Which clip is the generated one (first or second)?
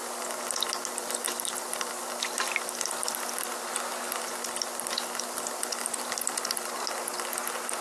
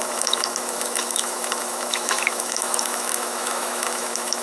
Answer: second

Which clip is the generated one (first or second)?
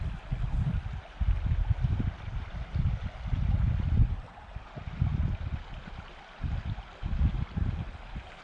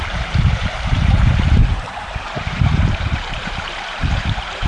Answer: second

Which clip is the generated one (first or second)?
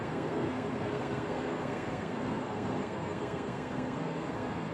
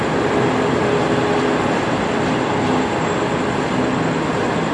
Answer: first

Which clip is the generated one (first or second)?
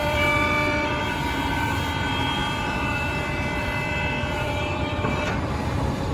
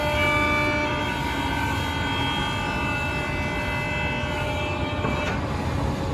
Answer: first